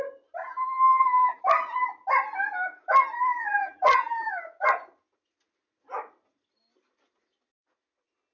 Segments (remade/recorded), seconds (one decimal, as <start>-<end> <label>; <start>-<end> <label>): 0.0-0.4 recorded; 0.4-1.4 remade; 1.4-3.5 recorded; 3.5-4.3 remade; 4.3-8.3 recorded